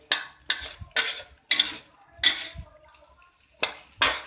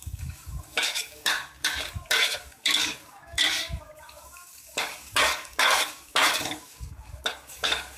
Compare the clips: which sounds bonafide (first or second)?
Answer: first